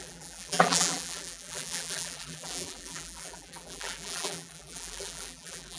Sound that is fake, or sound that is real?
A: fake